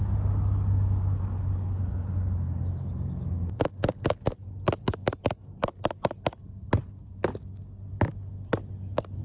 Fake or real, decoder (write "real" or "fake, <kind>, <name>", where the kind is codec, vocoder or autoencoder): real